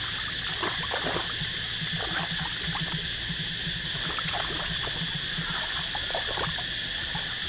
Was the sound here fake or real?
real